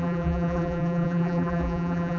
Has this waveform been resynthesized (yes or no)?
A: yes